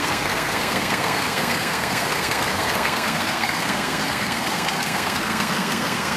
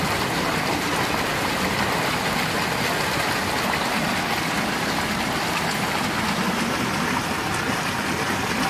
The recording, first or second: second